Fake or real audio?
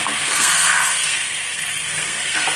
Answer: fake